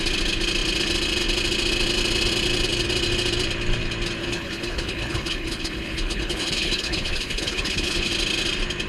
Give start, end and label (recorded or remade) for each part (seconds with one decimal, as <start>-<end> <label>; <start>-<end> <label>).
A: 0.0-4.2 recorded; 4.2-8.1 remade; 8.1-8.9 recorded